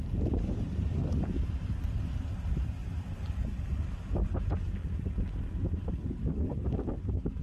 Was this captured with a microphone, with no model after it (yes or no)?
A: yes